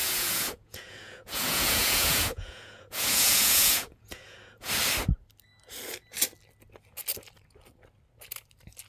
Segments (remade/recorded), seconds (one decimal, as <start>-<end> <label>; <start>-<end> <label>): 0.0-4.7 remade; 4.7-8.9 recorded